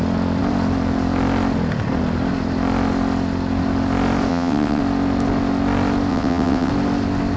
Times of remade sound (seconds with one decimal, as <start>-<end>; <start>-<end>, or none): 4.3-4.8; 6.1-6.7